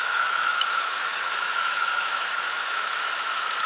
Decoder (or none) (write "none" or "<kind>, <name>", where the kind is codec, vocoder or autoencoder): autoencoder, DAC-VAE